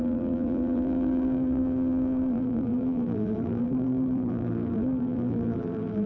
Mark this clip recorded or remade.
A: remade